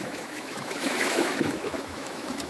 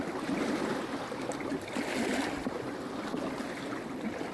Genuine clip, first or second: second